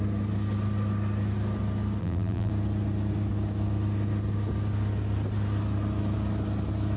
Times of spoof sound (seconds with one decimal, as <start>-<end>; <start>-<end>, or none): 2.0-2.5

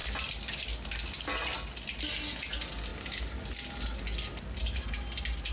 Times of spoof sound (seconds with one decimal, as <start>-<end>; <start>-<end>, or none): none

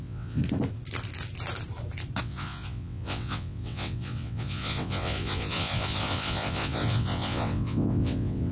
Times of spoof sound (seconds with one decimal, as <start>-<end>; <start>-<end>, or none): 0.0-0.4; 2.2-8.5

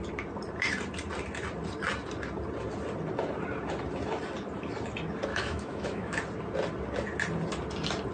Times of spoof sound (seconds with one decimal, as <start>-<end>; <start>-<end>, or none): 5.3-6.2

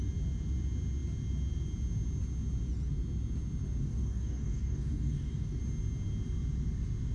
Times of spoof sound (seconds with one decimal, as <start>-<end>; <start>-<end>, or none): 3.8-5.6